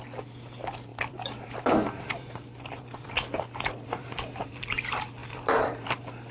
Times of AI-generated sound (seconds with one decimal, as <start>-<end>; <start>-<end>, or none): 0.9-4.7; 5.2-6.3